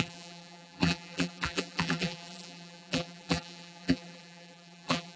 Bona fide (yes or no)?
no